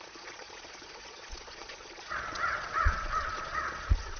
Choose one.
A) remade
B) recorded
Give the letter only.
A